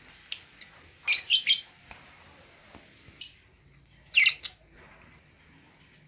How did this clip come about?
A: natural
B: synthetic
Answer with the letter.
A